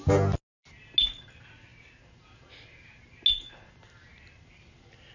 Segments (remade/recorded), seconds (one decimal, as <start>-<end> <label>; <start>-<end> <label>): 0.0-5.1 recorded